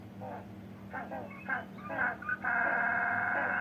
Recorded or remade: recorded